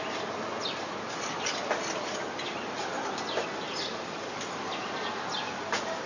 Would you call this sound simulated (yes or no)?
no